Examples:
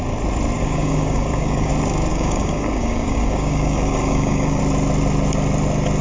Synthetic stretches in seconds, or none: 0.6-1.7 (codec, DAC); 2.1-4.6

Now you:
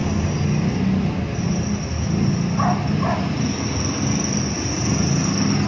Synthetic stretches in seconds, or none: none

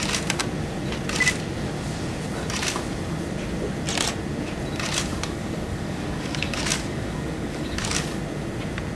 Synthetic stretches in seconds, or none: 5.1-8.2 (codec, DAC)

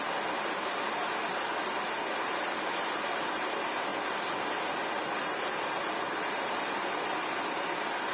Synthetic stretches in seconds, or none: none

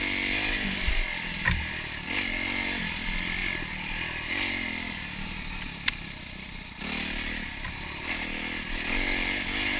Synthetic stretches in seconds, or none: none

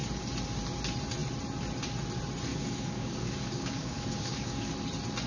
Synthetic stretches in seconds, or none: 2.5-4.7 (codec, DAC)

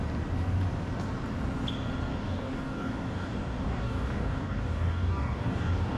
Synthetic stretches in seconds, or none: 2.1-6.0 (codec, DAC)

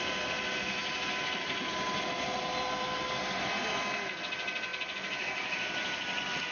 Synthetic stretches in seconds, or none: none